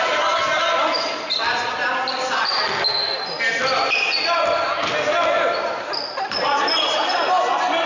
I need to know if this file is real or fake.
real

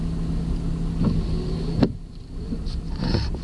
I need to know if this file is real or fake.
real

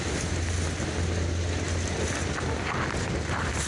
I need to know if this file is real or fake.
real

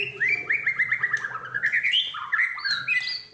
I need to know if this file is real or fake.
real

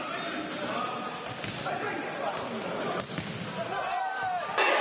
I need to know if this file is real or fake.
real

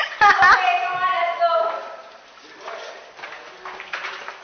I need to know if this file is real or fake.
real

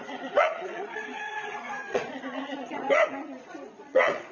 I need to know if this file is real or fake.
fake